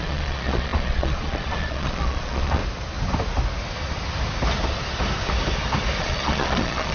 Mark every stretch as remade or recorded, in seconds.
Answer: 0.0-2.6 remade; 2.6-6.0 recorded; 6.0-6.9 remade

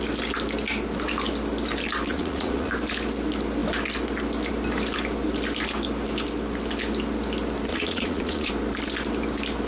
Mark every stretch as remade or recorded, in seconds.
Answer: 0.0-2.1 recorded; 2.1-2.7 remade; 2.7-7.7 recorded; 7.7-8.5 remade; 8.5-9.7 recorded

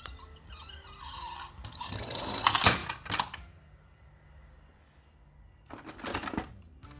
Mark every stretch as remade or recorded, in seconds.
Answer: 0.0-7.0 recorded

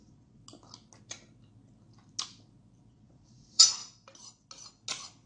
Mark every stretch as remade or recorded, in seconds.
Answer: 0.0-0.4 remade; 0.4-2.9 recorded; 2.9-3.8 remade; 3.8-5.3 recorded